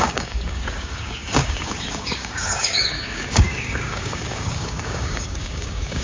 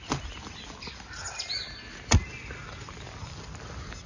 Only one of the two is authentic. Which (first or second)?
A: second